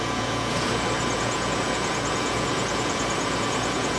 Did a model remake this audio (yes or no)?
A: yes